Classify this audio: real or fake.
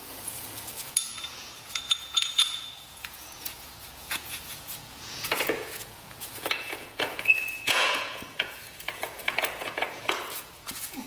fake